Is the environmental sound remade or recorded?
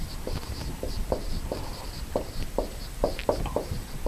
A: remade